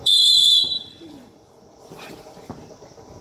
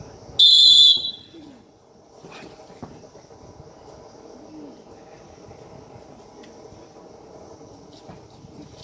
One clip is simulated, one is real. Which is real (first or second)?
second